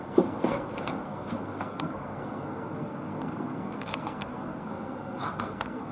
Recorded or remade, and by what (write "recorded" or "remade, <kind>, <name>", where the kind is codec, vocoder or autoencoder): remade, codec, SNAC